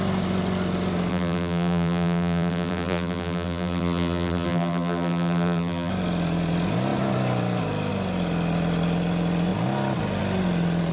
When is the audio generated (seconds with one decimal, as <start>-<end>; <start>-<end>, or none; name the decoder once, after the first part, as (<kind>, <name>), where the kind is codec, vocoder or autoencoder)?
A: 1.1-5.9 (vocoder, BigVGAN v2)